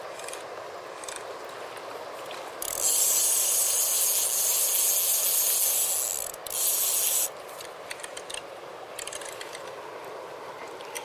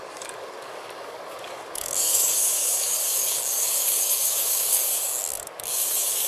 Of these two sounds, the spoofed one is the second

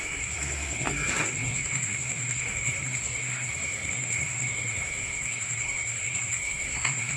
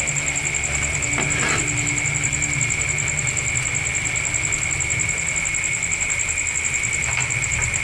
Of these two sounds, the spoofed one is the first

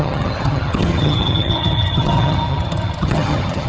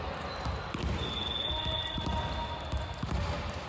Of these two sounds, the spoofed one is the first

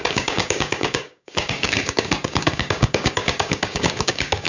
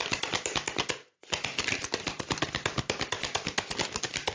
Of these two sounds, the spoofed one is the first